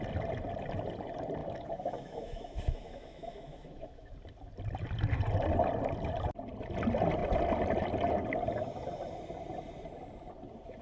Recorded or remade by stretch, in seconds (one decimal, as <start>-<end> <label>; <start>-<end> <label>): 0.0-1.4 recorded; 1.4-4.1 remade; 4.1-10.8 recorded